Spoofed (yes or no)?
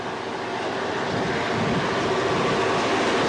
no